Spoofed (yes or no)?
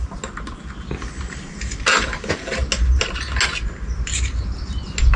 no